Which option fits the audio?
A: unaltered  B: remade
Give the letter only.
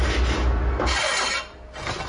A